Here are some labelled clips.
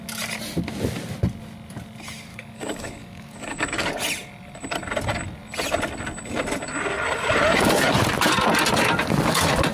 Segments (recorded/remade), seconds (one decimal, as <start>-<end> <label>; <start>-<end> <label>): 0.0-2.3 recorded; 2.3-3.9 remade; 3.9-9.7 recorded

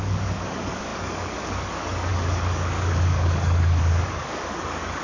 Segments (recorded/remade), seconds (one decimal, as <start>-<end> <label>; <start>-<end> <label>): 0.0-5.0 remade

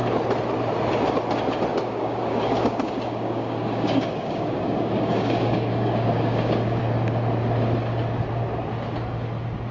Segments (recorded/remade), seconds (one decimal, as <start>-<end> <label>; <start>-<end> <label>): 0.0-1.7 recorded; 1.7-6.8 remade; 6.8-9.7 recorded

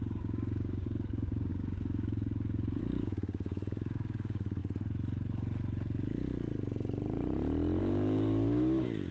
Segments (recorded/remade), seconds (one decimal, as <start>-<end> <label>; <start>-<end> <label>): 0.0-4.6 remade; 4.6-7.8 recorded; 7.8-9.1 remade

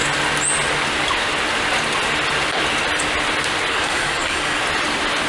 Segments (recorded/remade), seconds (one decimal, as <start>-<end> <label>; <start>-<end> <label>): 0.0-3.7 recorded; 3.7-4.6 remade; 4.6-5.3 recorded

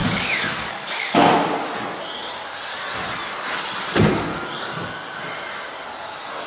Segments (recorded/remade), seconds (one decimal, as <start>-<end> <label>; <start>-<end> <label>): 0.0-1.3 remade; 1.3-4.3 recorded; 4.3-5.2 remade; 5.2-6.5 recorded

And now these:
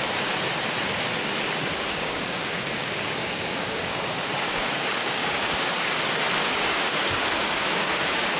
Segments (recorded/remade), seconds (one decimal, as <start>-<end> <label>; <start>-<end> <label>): 0.0-1.7 recorded; 1.7-6.0 remade; 6.0-6.4 recorded; 6.4-8.4 remade

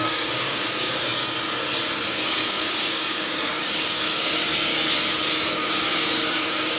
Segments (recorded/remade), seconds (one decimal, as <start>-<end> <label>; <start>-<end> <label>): 0.0-1.2 remade; 1.2-2.1 recorded; 2.1-4.7 remade; 4.7-5.4 recorded; 5.4-6.8 remade